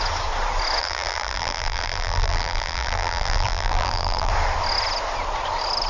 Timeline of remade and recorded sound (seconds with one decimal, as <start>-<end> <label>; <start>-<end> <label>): 0.0-0.8 recorded; 0.8-4.3 remade; 4.3-5.9 recorded